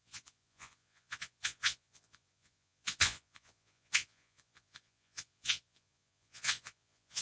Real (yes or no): no